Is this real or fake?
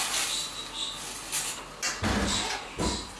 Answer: real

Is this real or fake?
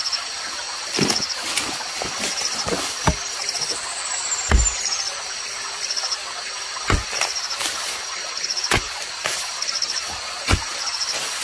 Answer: real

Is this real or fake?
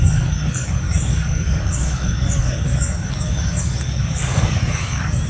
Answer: fake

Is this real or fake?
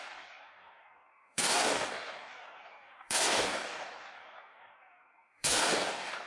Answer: fake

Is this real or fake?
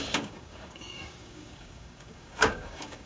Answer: fake